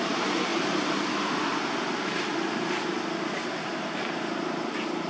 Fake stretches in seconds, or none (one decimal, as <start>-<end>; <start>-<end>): none

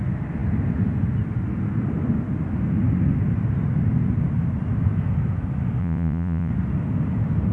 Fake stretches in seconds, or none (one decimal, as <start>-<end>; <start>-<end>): 5.8-6.5

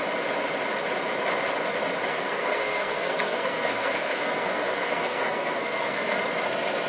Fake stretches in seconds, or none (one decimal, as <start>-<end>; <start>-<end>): 2.1-6.2

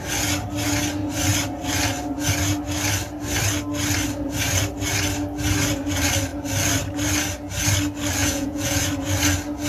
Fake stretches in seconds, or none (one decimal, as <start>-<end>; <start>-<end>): 8.2-8.8